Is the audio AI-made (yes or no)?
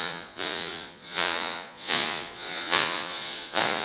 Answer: yes